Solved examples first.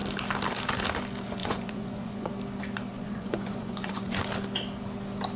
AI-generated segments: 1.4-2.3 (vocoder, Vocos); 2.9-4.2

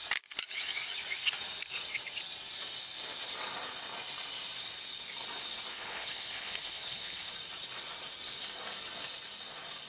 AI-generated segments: 5.7-7.3 (codec, HILCodec)

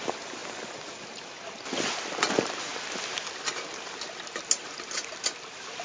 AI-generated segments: none

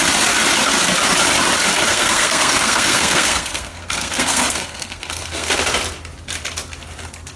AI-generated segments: 1.9-5.6 (codec, SNAC)